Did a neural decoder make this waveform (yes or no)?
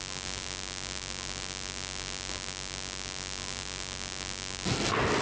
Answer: yes